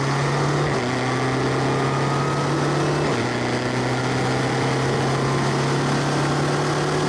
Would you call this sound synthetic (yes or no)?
no